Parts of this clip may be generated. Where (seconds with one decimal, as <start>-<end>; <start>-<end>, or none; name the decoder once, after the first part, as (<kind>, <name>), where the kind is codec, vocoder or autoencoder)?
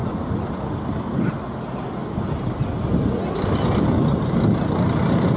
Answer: none